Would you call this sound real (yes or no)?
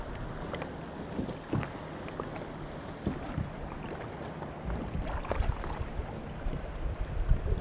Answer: yes